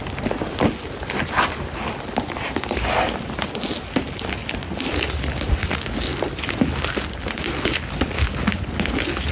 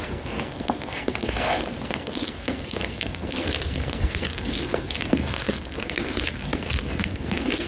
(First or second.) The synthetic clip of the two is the second